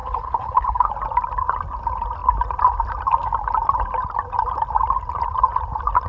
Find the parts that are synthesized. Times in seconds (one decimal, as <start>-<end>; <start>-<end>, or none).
0.0-0.9